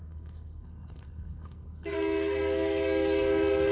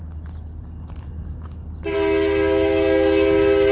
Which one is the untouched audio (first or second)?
second